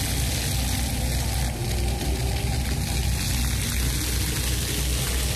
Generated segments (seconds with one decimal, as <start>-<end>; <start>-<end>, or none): none